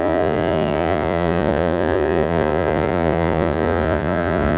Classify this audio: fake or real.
fake